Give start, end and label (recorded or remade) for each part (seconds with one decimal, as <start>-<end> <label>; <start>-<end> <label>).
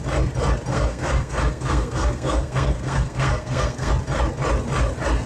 0.0-0.7 recorded; 0.7-3.9 remade; 3.9-5.3 recorded